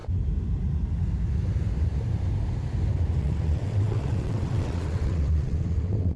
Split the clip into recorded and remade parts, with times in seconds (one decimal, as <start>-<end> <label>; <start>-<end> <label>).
0.0-3.2 recorded; 3.2-6.2 remade